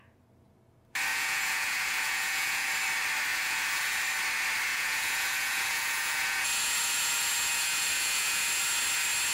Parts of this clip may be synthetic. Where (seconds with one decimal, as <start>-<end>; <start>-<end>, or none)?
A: 1.1-2.7; 3.3-4.0; 4.7-8.6